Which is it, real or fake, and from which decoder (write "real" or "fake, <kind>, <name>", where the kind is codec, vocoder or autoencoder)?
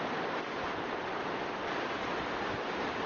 fake, vocoder, BigVGAN v2